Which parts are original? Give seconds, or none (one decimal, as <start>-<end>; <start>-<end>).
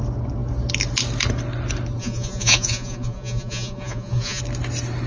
0.0-2.0; 4.4-5.1